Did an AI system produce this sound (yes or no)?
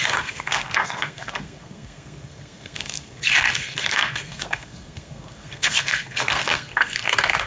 yes